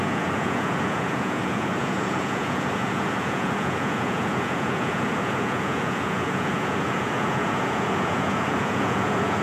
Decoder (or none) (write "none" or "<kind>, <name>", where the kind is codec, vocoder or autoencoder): vocoder, Vocos